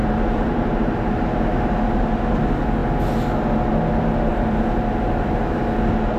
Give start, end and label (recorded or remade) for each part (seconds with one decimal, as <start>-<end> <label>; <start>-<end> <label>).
0.0-2.0 remade; 2.0-4.3 recorded; 4.3-5.6 remade; 5.6-6.2 recorded